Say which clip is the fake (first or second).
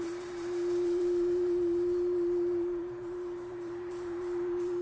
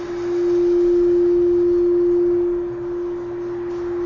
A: first